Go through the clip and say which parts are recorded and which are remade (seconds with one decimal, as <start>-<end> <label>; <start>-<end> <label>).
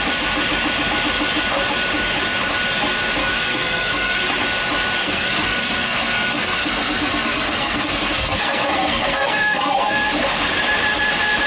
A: 0.0-3.2 recorded; 3.2-4.2 remade; 4.2-5.0 recorded; 5.0-10.1 remade; 10.1-11.5 recorded